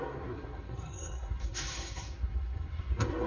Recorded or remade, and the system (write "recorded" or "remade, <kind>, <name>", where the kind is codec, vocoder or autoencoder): remade, codec, SNAC